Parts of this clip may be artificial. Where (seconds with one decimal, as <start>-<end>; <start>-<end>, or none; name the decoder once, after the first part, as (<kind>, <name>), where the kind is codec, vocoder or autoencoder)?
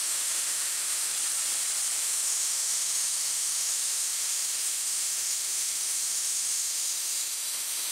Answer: 0.0-1.1 (autoencoder, DAC-VAE); 2.0-7.9